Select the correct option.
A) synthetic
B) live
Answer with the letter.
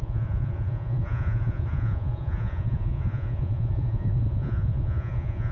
A